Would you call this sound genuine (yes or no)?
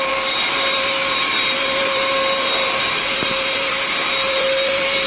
no